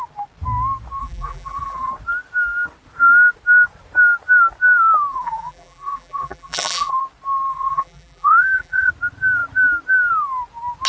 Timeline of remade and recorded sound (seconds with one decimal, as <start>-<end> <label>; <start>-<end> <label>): 0.0-1.0 recorded; 1.0-1.9 remade; 1.9-5.1 recorded; 5.1-7.0 remade; 7.0-7.5 recorded; 7.5-8.9 remade; 8.9-10.9 recorded